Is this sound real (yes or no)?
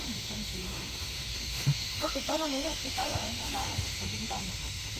no